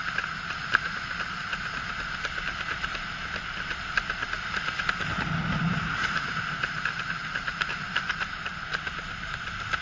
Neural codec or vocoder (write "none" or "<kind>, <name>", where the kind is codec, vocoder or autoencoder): none